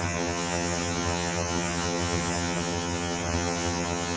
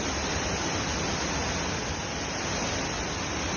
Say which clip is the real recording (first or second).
second